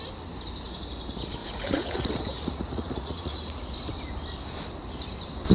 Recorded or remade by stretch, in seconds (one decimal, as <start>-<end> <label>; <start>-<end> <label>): 0.0-1.4 recorded; 1.4-3.7 remade; 3.7-5.5 recorded

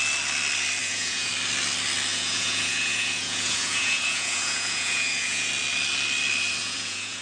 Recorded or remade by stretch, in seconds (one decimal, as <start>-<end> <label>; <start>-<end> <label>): 0.0-0.8 recorded; 0.8-1.3 remade; 1.3-2.1 recorded; 2.1-5.5 remade; 5.5-6.6 recorded; 6.6-7.2 remade

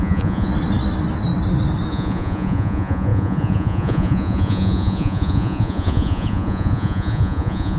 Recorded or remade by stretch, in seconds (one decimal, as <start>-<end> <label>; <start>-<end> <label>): 0.0-0.5 remade; 0.5-1.9 recorded; 1.9-7.8 remade

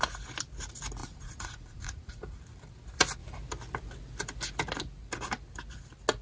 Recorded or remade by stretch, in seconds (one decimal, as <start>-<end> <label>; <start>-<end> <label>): 0.0-1.0 recorded; 1.0-2.4 remade; 2.4-6.2 recorded